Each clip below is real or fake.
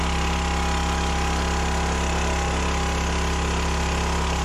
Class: real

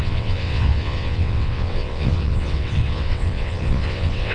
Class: fake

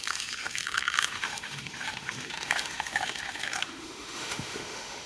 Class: fake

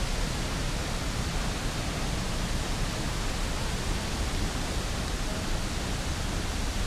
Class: real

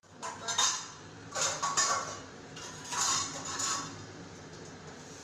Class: fake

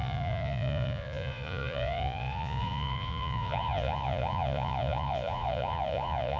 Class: fake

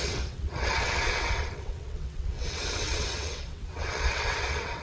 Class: fake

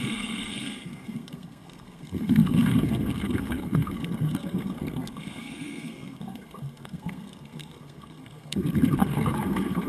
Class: fake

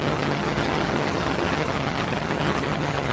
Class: fake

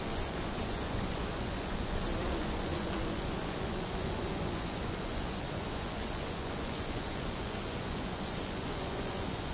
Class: fake